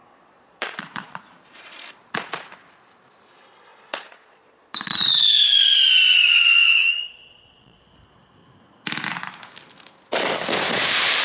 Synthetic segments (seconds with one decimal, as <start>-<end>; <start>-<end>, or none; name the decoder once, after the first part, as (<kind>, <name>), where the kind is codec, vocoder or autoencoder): 0.0-1.4 (vocoder, Vocos); 3.7-7.8